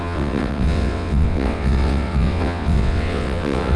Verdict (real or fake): fake